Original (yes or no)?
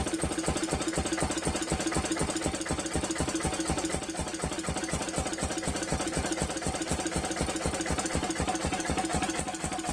yes